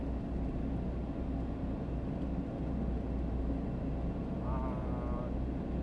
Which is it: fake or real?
real